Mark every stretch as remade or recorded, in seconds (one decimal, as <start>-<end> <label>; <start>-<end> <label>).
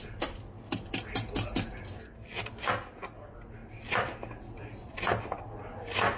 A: 0.0-3.6 recorded; 3.6-5.3 remade; 5.3-6.2 recorded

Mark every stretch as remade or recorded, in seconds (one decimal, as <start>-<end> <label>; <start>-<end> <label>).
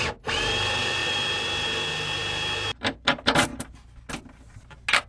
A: 0.0-5.1 recorded